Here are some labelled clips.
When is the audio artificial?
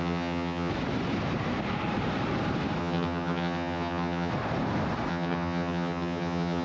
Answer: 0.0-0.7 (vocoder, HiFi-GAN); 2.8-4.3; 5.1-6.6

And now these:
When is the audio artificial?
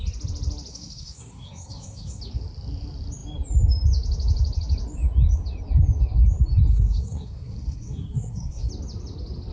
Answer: 0.7-2.2 (codec, SNAC); 6.7-8.7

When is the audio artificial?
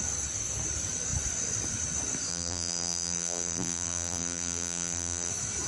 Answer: 2.3-5.3 (vocoder, BigVGAN v2)